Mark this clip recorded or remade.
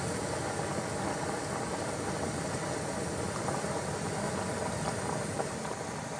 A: recorded